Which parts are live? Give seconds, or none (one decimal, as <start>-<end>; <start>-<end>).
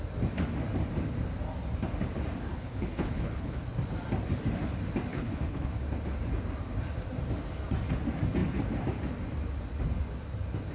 0.0-2.5; 3.6-5.1; 5.7-10.7